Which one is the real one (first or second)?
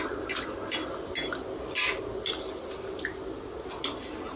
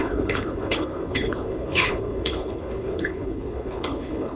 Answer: first